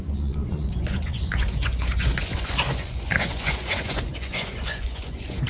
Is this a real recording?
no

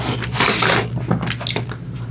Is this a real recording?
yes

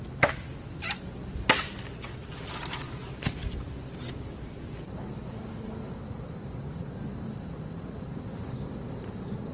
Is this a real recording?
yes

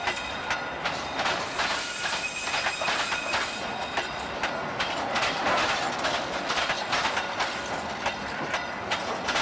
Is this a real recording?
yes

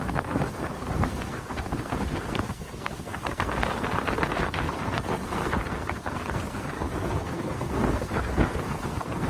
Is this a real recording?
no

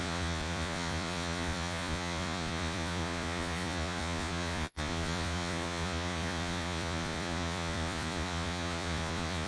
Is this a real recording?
no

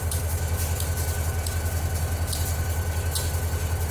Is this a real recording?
yes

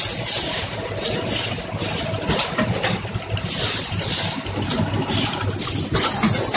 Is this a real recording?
yes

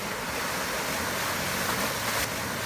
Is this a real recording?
yes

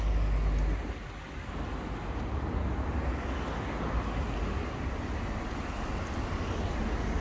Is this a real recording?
yes